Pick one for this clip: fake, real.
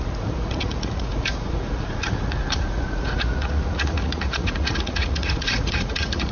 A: fake